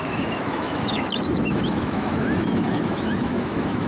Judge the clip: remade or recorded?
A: remade